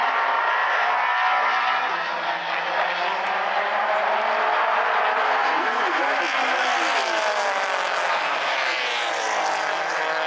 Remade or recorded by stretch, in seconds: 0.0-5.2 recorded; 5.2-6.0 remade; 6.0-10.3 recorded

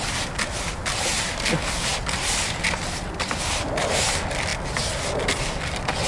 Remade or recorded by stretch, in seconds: 0.0-6.1 recorded

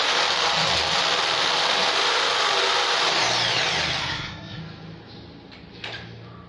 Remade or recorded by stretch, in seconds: 0.0-4.0 recorded; 4.0-4.6 remade; 4.6-6.5 recorded

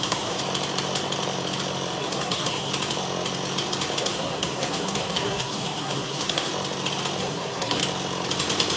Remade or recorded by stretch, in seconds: 0.0-0.4 remade; 0.4-2.0 recorded; 2.0-2.7 remade; 2.7-4.0 recorded; 4.0-6.5 remade; 6.5-7.2 recorded; 7.2-7.8 remade; 7.8-8.8 recorded

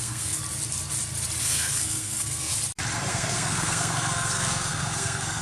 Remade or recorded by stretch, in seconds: 0.0-0.4 remade; 0.4-1.4 recorded; 1.4-2.5 remade; 2.5-3.1 recorded; 3.1-5.4 remade

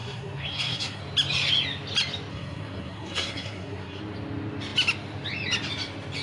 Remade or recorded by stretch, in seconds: 0.0-1.0 remade; 1.0-2.3 recorded; 2.3-4.0 remade; 4.0-6.2 recorded

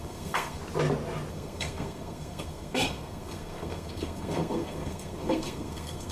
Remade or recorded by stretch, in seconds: 0.0-0.6 remade; 0.6-1.3 recorded; 1.3-6.1 remade

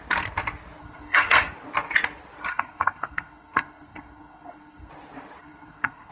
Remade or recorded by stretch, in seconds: 0.0-0.8 recorded; 0.8-1.4 remade; 1.4-2.5 recorded; 2.5-4.9 remade; 4.9-5.4 recorded; 5.4-6.1 remade